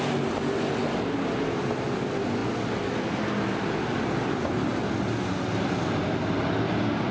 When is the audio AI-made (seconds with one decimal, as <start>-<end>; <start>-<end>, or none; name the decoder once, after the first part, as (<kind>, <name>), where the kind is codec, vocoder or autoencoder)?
none